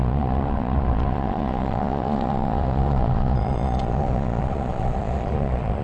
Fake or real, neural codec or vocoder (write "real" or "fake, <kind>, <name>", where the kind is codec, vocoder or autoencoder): fake, vocoder, Vocos